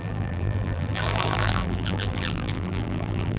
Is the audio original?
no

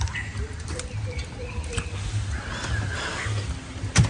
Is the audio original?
yes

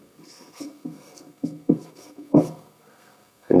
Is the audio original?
no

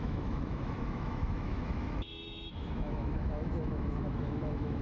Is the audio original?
no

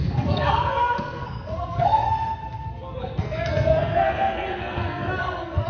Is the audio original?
no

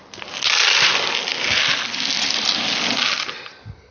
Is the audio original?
yes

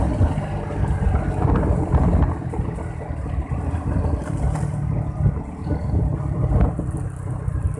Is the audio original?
yes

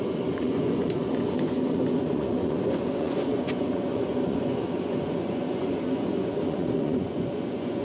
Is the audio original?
no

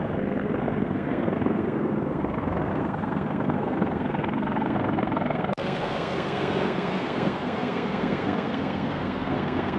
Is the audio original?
no